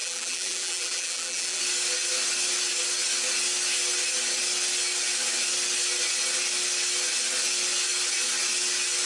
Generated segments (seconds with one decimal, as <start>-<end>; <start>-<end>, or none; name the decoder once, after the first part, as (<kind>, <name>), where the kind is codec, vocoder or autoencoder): 0.0-1.6 (vocoder, BigVGAN v2)